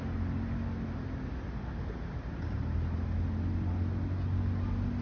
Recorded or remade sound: recorded